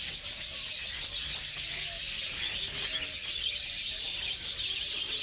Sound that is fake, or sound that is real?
real